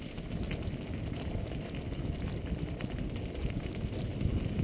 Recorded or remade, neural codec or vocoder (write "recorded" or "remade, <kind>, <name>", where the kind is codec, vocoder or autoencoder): recorded